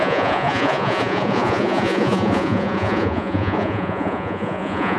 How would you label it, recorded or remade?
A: remade